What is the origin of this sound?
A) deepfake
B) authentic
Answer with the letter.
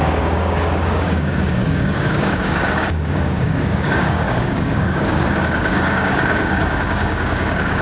A